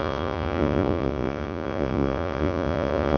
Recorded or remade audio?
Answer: remade